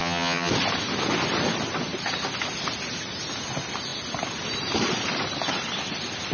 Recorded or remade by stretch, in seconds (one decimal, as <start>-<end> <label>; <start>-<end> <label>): 0.0-0.5 remade; 0.5-6.3 recorded